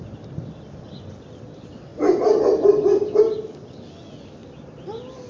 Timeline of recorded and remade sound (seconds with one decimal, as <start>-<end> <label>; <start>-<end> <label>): 0.0-5.3 recorded